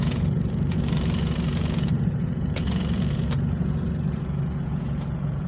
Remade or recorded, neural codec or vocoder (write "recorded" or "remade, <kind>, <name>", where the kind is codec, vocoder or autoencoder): remade, vocoder, Vocos